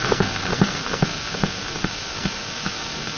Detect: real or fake fake